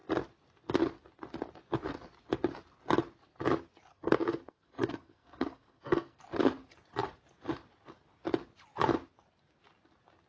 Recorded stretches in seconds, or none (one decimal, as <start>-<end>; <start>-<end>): 0.0-3.9; 6.2-10.3